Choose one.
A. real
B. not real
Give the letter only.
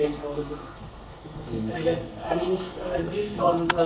B